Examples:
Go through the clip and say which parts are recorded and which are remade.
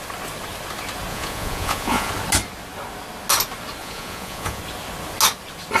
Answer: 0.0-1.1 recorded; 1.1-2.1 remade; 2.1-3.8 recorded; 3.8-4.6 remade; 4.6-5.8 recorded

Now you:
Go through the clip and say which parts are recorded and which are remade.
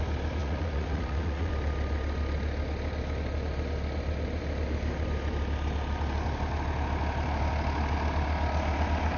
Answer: 0.0-0.4 recorded; 0.4-1.5 remade; 1.5-9.2 recorded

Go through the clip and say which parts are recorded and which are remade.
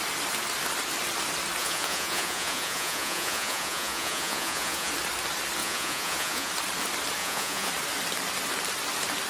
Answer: 0.0-1.6 recorded; 1.6-4.9 remade; 4.9-5.6 recorded; 5.6-6.5 remade; 6.5-7.2 recorded; 7.2-7.7 remade; 7.7-9.3 recorded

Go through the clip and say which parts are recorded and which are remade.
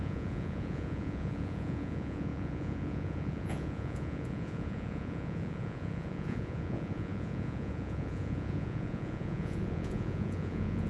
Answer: 0.0-10.9 remade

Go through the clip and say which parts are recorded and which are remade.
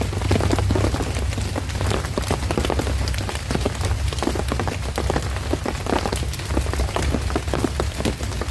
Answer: 0.0-8.5 recorded